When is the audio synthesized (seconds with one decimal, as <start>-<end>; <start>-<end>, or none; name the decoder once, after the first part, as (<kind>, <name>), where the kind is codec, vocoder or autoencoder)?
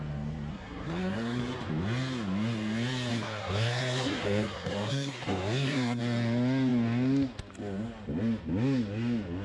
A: 0.5-1.4 (codec, SNAC); 3.1-6.0